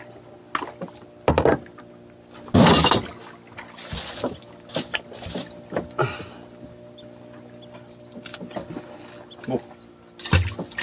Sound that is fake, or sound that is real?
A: real